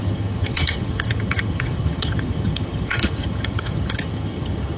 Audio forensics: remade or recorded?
remade